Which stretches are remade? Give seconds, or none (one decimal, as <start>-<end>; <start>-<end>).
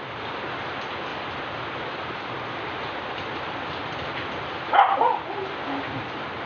none